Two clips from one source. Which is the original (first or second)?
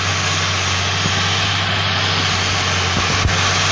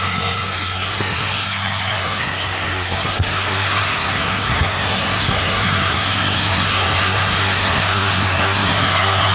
first